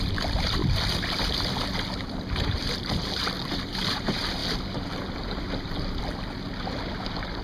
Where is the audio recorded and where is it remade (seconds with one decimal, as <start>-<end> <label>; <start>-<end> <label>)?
0.0-7.4 recorded